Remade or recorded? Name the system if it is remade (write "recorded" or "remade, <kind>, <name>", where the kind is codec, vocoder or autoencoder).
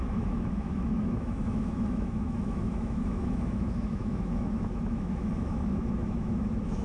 remade, autoencoder, DAC-VAE